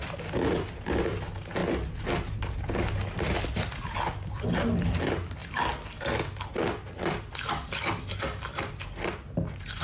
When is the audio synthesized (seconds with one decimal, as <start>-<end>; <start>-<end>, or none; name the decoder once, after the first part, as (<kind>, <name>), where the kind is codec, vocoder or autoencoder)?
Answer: none